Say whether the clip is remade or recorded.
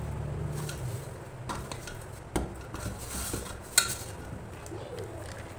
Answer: recorded